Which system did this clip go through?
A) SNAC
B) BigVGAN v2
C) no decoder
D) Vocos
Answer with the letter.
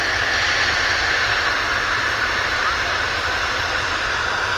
C